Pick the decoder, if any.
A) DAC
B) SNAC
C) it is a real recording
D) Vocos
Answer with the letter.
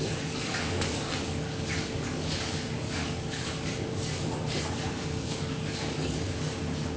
A